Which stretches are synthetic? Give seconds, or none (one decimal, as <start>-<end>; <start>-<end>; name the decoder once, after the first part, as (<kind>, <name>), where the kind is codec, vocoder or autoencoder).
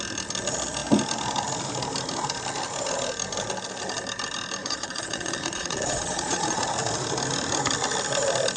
4.6-6.7 (vocoder, Vocos)